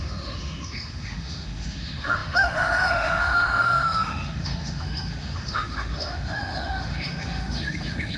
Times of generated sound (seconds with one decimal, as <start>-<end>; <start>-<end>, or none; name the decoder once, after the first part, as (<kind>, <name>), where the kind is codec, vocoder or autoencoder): 0.0-8.2 (autoencoder, DAC-VAE)